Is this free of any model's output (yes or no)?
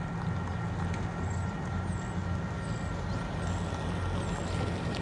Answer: yes